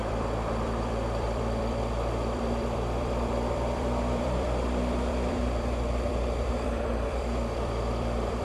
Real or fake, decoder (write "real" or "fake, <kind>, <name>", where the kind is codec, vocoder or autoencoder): fake, vocoder, BigVGAN v2